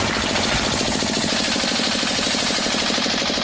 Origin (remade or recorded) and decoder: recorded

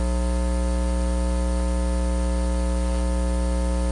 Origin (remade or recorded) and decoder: recorded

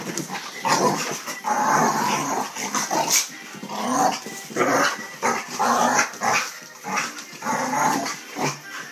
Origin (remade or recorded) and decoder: remade, vocoder, BigVGAN v2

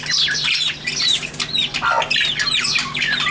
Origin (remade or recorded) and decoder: recorded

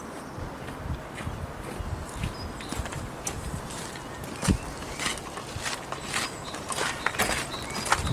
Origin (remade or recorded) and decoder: recorded